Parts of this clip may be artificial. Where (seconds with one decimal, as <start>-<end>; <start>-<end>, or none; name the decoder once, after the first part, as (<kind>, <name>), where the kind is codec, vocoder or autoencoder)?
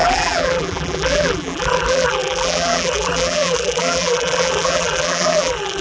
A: 0.0-5.8 (vocoder, BigVGAN v2)